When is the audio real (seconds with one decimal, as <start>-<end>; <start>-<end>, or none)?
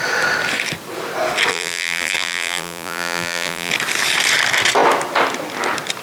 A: 0.0-1.5; 3.7-6.0